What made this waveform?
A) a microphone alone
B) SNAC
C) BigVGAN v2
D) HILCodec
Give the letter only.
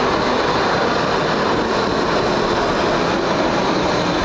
A